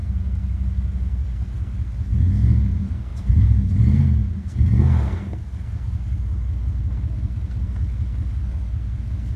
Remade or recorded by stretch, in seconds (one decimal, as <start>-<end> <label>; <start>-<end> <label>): 0.0-9.4 remade